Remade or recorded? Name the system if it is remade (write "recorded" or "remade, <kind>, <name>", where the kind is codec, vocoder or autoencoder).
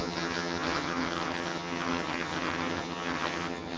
remade, vocoder, HiFi-GAN